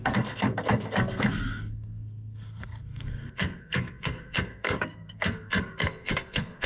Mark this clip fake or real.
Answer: fake